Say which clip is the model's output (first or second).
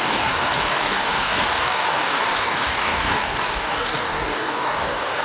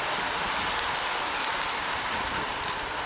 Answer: first